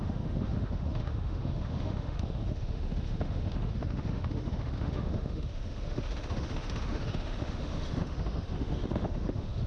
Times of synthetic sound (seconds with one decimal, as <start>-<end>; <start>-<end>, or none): 0.0-9.7